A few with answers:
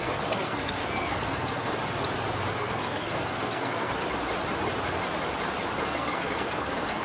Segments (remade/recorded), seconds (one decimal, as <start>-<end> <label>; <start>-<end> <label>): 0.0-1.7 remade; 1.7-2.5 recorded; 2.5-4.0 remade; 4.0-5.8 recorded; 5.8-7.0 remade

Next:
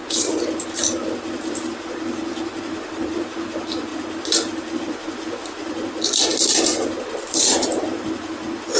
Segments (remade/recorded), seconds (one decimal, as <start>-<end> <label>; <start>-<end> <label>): 0.0-1.5 remade; 1.5-3.9 recorded; 3.9-4.8 remade; 4.8-6.3 recorded; 6.3-8.1 remade; 8.1-8.8 recorded

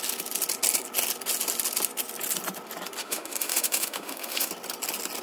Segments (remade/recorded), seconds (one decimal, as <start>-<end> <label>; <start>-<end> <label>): 0.0-3.0 recorded; 3.0-4.5 remade; 4.5-5.2 recorded

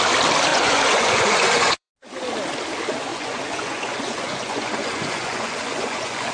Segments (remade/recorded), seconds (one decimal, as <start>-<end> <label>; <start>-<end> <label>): 0.0-0.5 recorded; 0.5-1.9 remade; 1.9-3.1 recorded; 3.1-6.3 remade

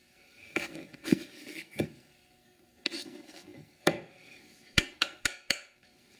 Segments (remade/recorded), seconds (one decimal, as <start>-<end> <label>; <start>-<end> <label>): 0.0-6.2 remade

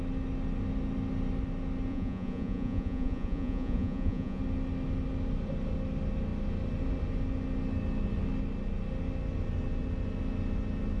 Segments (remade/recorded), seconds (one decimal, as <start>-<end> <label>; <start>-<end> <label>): 0.0-1.9 recorded; 1.9-4.4 remade; 4.4-11.0 recorded

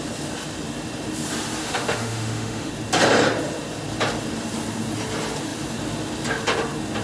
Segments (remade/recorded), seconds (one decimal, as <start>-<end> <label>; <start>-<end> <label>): 0.0-1.6 recorded; 1.6-2.7 remade; 2.7-7.0 recorded

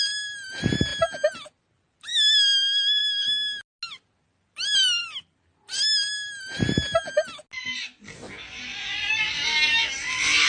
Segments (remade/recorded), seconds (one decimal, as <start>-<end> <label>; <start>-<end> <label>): 0.0-2.1 recorded; 2.1-3.0 remade; 3.0-10.5 recorded